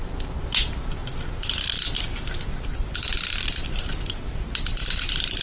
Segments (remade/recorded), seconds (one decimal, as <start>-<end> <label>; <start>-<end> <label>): 0.0-1.0 recorded; 1.0-4.2 remade; 4.2-5.4 recorded